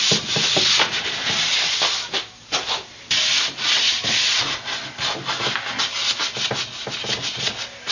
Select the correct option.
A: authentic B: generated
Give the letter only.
A